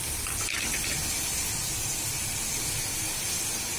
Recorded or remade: recorded